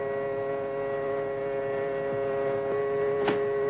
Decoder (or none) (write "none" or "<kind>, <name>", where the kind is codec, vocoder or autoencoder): none